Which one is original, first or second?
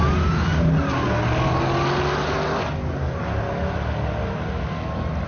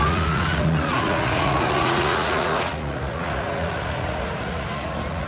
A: first